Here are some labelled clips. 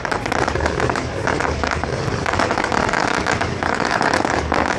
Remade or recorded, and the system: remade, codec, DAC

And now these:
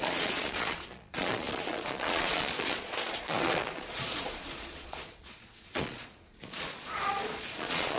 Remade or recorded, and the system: remade, vocoder, Vocos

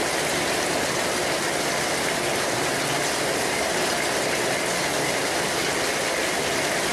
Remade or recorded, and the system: recorded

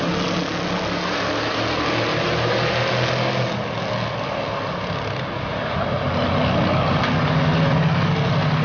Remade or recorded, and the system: recorded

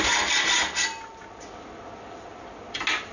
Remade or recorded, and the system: recorded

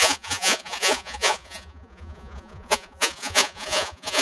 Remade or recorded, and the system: remade, vocoder, Vocos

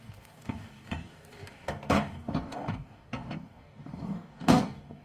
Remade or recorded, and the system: remade, codec, DAC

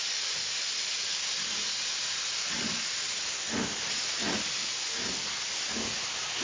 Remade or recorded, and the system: recorded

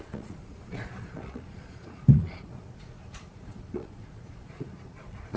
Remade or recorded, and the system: remade, vocoder, Vocos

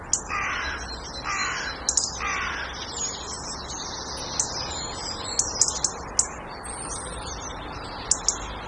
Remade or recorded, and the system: recorded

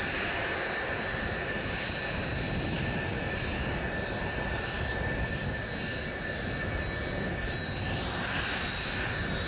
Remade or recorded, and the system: recorded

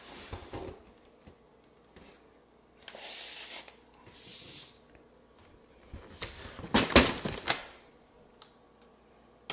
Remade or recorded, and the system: recorded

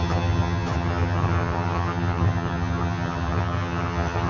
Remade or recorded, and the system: remade, vocoder, HiFi-GAN